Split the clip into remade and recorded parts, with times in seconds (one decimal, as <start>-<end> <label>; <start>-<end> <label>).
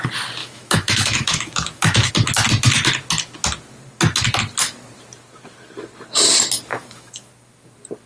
0.0-0.4 recorded; 0.4-2.1 remade; 2.1-6.7 recorded; 6.7-7.3 remade; 7.3-8.1 recorded